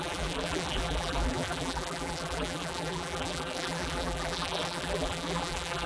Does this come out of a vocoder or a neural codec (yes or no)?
yes